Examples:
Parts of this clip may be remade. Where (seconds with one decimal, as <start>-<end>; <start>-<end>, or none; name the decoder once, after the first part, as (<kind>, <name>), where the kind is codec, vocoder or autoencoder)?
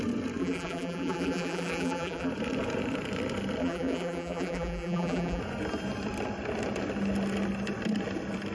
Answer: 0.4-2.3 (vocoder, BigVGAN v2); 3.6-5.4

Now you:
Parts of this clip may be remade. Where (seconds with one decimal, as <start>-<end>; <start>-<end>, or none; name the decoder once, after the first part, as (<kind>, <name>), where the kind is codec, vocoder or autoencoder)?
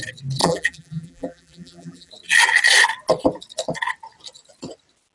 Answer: 0.4-2.1 (vocoder, BigVGAN v2)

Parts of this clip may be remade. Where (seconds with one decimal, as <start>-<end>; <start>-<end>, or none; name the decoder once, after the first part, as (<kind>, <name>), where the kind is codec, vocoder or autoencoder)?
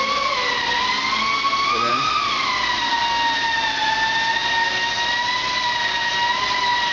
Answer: 1.9-3.0 (vocoder, BigVGAN v2); 5.4-6.1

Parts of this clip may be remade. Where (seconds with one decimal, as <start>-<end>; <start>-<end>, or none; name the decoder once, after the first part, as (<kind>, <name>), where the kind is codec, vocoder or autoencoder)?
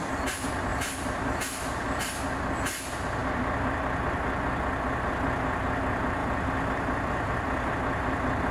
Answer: 0.7-2.1 (vocoder, BigVGAN v2); 6.2-7.7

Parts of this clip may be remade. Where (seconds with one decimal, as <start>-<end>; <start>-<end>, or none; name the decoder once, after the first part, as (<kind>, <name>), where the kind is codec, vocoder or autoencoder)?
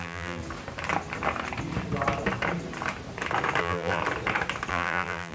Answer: 0.0-0.4 (vocoder, BigVGAN v2); 3.6-4.0; 4.7-5.3